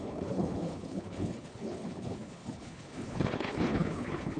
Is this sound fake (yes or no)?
yes